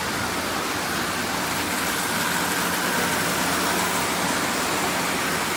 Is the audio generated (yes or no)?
no